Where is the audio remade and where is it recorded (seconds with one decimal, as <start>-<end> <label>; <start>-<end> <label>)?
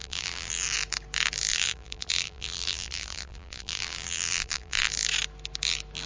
0.0-0.5 remade; 0.5-1.5 recorded; 1.5-4.9 remade; 4.9-6.1 recorded